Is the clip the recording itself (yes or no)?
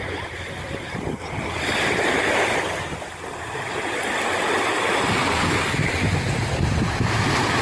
no